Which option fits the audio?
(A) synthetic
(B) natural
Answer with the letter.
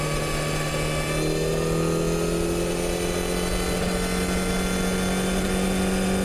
B